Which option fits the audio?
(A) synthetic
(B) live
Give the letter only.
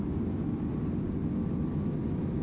B